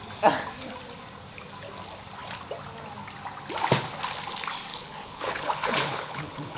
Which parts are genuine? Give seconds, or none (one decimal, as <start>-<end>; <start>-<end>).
0.0-4.7